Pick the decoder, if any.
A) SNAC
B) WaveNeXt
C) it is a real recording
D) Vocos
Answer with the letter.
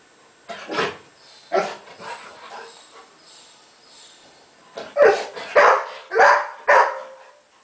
C